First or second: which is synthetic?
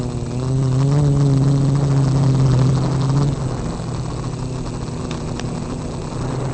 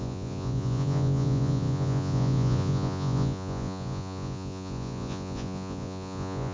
second